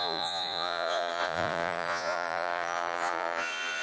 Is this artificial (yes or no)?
yes